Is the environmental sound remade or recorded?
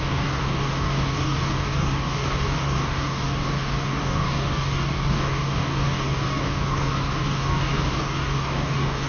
remade